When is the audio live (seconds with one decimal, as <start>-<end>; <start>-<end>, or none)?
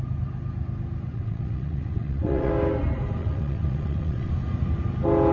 0.0-1.1; 2.5-3.2; 4.3-5.3